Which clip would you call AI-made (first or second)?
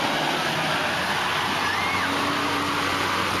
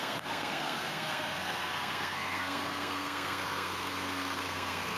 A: second